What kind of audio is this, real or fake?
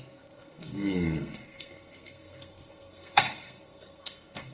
fake